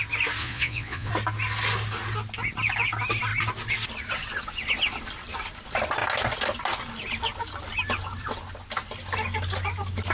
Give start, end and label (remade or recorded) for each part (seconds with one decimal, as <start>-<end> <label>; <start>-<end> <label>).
0.0-0.4 recorded; 0.4-1.1 remade; 1.1-10.1 recorded